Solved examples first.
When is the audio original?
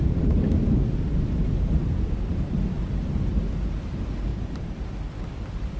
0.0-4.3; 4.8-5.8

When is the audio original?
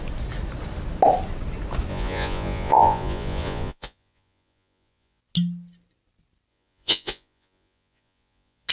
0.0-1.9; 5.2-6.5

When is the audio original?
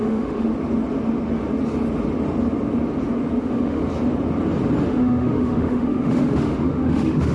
0.5-3.4; 3.8-4.9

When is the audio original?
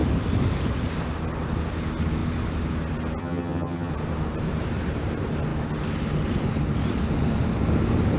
0.0-3.2; 3.9-8.2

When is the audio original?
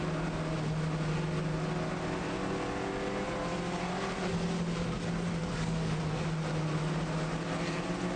0.0-5.4; 6.0-8.2